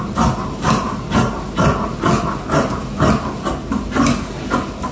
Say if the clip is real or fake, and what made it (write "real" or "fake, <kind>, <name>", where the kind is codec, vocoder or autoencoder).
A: real